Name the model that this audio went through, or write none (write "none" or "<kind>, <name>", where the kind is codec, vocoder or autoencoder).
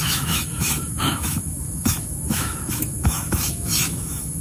autoencoder, DAC-VAE